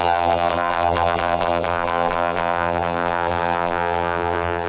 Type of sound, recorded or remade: remade